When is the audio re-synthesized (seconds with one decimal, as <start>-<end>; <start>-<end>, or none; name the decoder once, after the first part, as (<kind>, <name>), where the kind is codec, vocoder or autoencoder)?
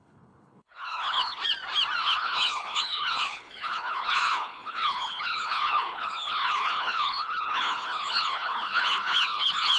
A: 0.0-1.4 (codec, HILCodec); 2.0-9.8